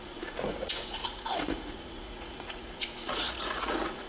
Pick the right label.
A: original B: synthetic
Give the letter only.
B